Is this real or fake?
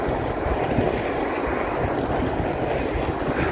real